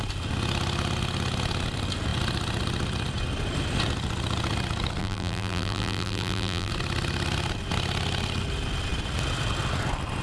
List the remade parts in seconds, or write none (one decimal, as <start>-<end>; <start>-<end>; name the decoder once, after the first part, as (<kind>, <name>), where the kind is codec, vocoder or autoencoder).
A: 5.0-6.7 (vocoder, BigVGAN v2)